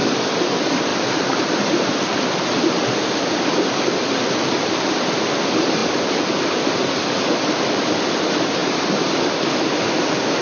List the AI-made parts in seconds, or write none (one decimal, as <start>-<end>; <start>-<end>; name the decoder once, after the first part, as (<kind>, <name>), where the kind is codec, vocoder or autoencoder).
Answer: 0.9-1.9 (vocoder, BigVGAN v2); 8.6-9.1

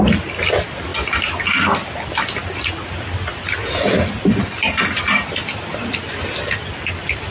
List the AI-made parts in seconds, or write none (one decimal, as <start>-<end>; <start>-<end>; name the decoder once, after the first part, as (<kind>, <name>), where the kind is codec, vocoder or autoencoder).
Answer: none

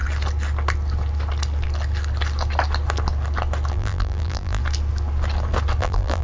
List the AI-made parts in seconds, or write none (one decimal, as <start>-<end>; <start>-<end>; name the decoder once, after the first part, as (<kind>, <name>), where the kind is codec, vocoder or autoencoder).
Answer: 3.7-4.6 (vocoder, BigVGAN v2); 5.8-6.2